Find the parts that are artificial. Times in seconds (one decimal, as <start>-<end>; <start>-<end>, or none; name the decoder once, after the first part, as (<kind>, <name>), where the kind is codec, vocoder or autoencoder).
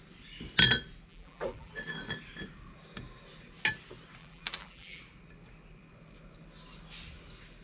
1.1-1.7 (vocoder, BigVGAN v2); 4.2-5.0